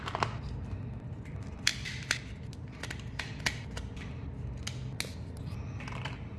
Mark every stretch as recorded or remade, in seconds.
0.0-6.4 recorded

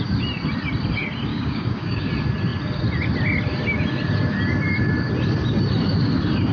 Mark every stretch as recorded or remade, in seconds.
0.0-1.3 recorded; 1.3-2.1 remade; 2.1-6.5 recorded

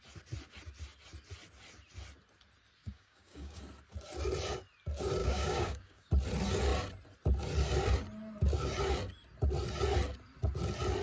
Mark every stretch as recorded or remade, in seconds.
0.0-2.8 recorded; 2.8-3.6 remade; 3.6-5.2 recorded; 5.2-6.1 remade; 6.1-11.0 recorded

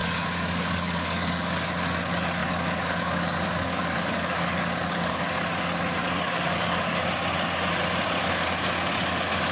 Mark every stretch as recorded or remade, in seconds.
0.0-1.7 remade; 1.7-2.4 recorded; 2.4-5.3 remade; 5.3-6.0 recorded; 6.0-7.0 remade; 7.0-9.5 recorded

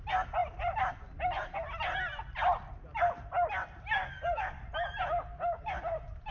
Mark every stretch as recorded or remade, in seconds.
0.0-4.0 recorded; 4.0-4.6 remade; 4.6-6.3 recorded

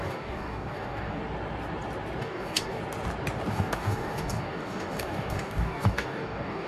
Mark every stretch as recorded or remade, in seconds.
0.0-1.2 remade; 1.2-2.2 recorded; 2.2-2.8 remade; 2.8-3.5 recorded; 3.5-6.7 remade

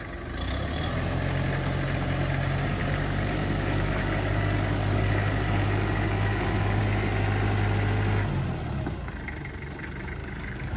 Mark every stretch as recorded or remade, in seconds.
0.0-2.8 recorded; 2.8-6.8 remade; 6.8-10.2 recorded; 10.2-10.8 remade

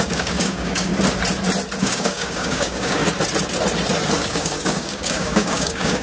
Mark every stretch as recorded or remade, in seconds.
0.0-0.9 remade; 0.9-1.8 recorded; 1.8-3.0 remade; 3.0-4.2 recorded; 4.2-6.0 remade